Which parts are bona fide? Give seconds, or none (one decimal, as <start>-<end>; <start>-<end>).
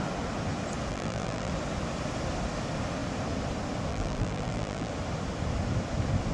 0.0-0.9; 1.5-3.9; 4.9-6.3